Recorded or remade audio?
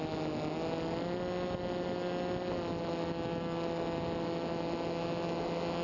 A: recorded